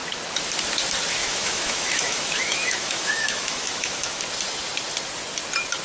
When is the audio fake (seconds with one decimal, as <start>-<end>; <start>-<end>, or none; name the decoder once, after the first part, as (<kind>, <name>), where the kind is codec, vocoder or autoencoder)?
1.2-4.2 (autoencoder, DAC-VAE)

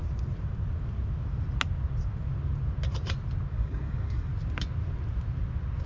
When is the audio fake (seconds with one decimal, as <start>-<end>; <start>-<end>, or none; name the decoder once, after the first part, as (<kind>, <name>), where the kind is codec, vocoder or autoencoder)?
3.5-4.3 (codec, DAC)

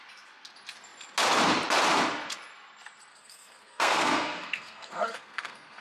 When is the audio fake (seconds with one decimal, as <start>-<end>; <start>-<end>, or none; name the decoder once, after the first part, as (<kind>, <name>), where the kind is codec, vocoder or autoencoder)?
3.1-5.8 (codec, SNAC)

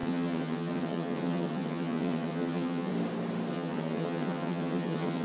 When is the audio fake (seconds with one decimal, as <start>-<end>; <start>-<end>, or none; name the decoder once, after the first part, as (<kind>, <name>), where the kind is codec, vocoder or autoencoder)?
0.0-2.9 (vocoder, HiFi-GAN); 3.5-5.2